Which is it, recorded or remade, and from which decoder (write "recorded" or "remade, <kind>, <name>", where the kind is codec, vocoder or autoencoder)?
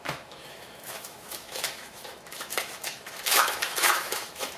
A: remade, autoencoder, DAC-VAE